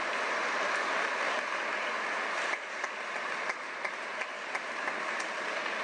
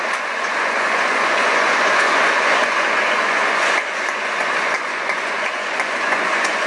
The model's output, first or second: second